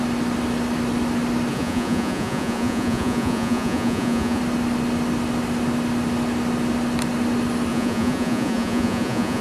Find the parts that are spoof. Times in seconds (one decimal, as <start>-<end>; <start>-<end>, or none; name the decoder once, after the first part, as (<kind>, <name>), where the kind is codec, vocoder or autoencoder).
1.5-4.4 (vocoder, Vocos); 7.7-9.4